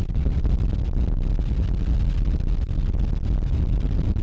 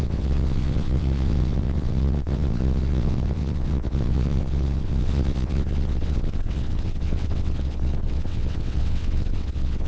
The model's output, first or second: second